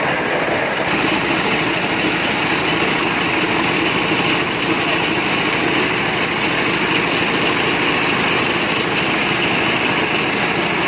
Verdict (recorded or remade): recorded